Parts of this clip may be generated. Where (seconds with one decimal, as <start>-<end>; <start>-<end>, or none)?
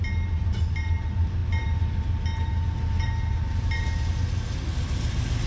none